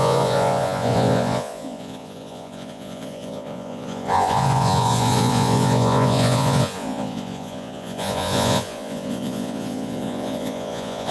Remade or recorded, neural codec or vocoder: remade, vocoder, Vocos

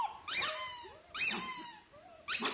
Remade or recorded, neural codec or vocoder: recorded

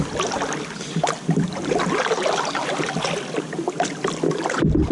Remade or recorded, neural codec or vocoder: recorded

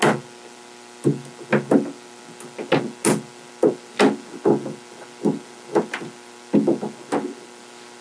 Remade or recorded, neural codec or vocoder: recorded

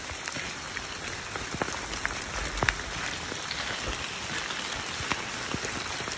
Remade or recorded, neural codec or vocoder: recorded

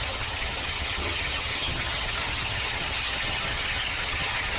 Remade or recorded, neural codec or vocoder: remade, vocoder, HiFi-GAN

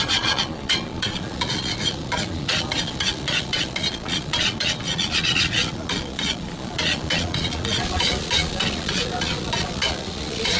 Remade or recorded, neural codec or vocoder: remade, vocoder, Vocos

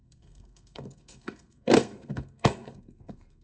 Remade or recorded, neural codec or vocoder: remade, codec, SNAC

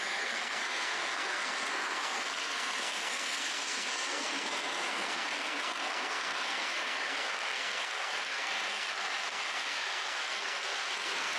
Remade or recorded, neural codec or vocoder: remade, codec, SNAC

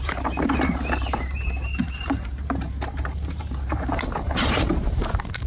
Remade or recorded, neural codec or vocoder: remade, vocoder, BigVGAN v2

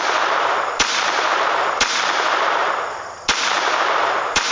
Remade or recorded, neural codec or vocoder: recorded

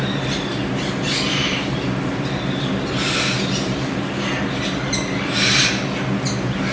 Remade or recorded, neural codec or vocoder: recorded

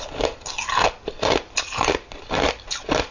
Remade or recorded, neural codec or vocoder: recorded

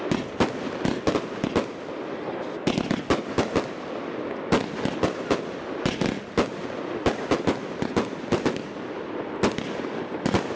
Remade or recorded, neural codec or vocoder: recorded